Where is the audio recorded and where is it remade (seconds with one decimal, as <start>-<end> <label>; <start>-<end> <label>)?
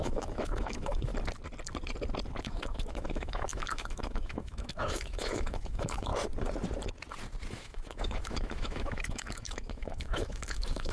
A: 0.0-1.1 remade; 1.1-2.4 recorded; 2.4-6.1 remade; 6.1-7.5 recorded; 7.5-10.9 remade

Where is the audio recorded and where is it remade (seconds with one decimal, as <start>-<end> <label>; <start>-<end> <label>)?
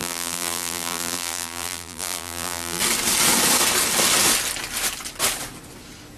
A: 0.0-2.8 remade; 2.8-6.2 recorded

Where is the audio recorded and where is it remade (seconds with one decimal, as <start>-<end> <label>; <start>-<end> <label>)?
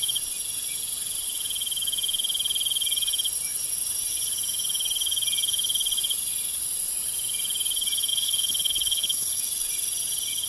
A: 0.0-8.1 recorded; 8.1-9.4 remade; 9.4-10.5 recorded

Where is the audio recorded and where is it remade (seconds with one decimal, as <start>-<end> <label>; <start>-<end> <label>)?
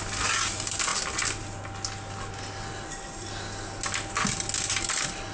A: 0.0-5.3 recorded